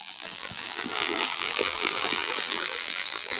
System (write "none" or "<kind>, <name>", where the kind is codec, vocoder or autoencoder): vocoder, BigVGAN v2